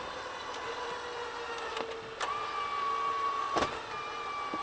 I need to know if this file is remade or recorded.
recorded